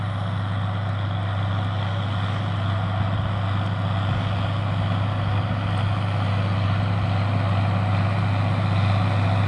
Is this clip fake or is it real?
real